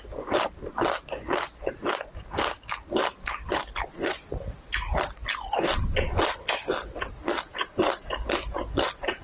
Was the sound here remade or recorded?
recorded